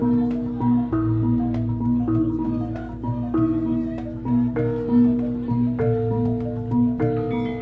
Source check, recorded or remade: recorded